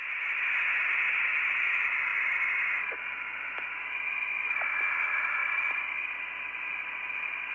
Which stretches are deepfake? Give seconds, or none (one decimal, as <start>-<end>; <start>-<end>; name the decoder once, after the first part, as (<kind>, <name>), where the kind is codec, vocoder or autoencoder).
none